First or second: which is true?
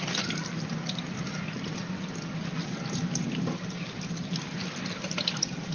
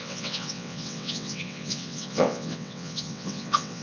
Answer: first